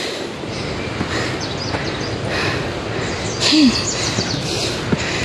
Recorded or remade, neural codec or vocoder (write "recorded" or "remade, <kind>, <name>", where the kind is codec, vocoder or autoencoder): recorded